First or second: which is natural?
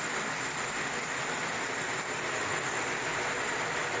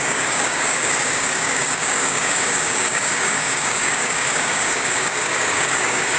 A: first